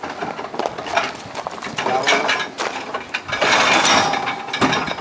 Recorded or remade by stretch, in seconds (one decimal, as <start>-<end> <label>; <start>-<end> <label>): 0.0-5.0 recorded